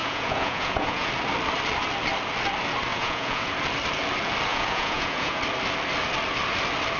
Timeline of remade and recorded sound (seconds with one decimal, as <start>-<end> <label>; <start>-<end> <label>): 0.0-1.1 remade; 1.1-2.9 recorded; 2.9-3.5 remade; 3.5-4.5 recorded; 4.5-5.4 remade; 5.4-7.0 recorded

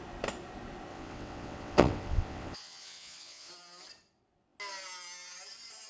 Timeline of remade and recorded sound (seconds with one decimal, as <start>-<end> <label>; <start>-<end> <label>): 0.0-0.9 recorded; 0.9-3.5 remade; 3.5-5.9 recorded

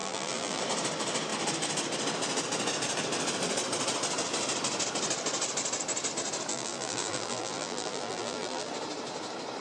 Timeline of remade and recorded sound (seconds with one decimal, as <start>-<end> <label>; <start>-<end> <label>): 0.0-0.6 remade; 0.6-6.5 recorded; 6.5-8.7 remade; 8.7-9.6 recorded

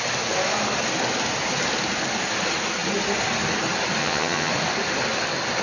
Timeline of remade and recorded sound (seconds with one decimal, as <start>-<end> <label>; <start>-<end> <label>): 0.0-4.0 recorded; 4.0-4.5 remade; 4.5-5.6 recorded

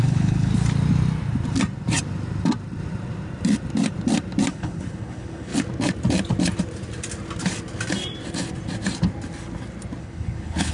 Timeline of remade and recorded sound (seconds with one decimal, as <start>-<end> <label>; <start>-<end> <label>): 0.0-0.5 remade; 0.5-4.5 recorded; 4.5-5.5 remade; 5.5-10.0 recorded; 10.0-10.7 remade